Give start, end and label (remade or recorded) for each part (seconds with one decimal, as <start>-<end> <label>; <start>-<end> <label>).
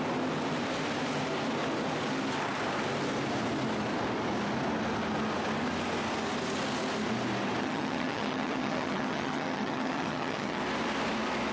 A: 0.0-7.6 recorded; 7.6-10.6 remade; 10.6-11.5 recorded